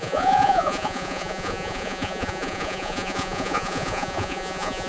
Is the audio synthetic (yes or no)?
yes